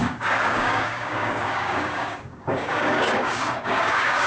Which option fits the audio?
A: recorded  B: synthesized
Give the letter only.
B